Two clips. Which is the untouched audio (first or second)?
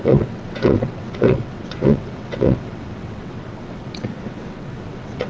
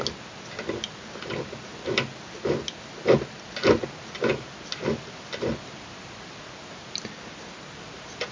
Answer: second